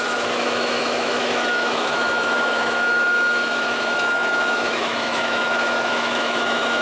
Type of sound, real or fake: fake